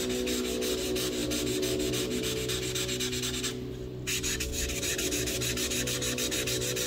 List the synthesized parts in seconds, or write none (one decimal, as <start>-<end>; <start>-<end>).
none